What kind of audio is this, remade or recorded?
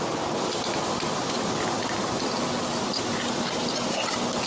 recorded